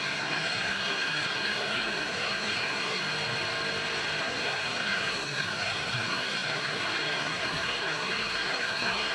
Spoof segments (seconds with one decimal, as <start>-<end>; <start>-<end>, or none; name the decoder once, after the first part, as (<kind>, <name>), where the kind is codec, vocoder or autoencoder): 0.0-3.0 (codec, SNAC); 4.2-9.1